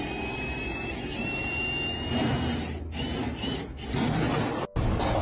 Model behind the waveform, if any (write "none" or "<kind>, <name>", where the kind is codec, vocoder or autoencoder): none